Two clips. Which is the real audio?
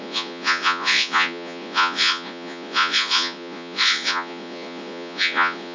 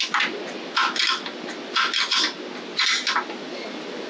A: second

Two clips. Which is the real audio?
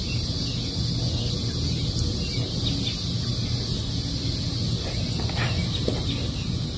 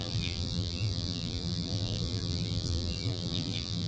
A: first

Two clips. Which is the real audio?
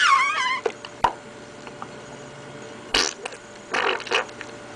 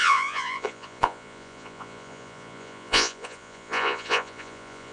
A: first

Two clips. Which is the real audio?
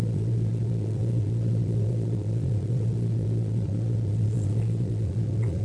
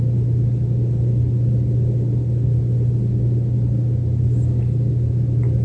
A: second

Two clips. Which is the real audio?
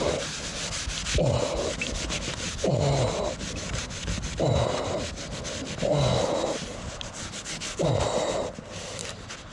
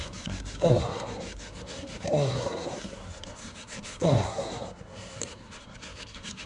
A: first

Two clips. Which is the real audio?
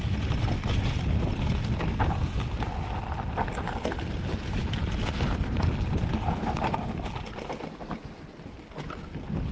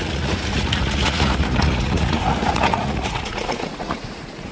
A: first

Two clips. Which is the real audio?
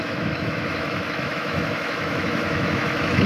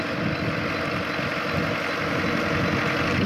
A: second